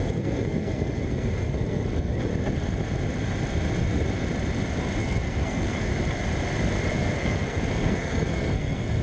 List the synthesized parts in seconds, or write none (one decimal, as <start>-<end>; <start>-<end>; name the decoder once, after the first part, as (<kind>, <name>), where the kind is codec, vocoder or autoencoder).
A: 0.0-2.3 (codec, SNAC); 5.0-5.9; 6.9-9.0